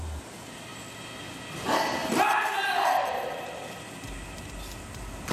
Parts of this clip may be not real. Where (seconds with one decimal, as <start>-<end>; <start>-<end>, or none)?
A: none